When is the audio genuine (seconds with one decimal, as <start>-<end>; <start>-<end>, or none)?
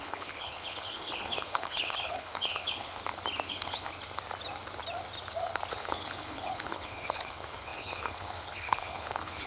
3.0-3.5; 3.9-5.7